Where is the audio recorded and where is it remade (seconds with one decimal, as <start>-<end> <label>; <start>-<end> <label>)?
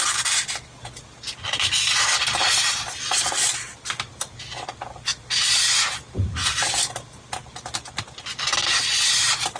0.0-9.6 recorded